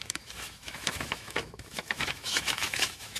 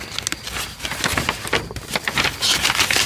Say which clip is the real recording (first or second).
second